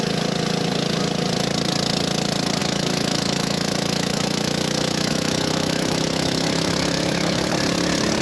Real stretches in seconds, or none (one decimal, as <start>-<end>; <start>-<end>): 0.0-2.6; 7.5-8.2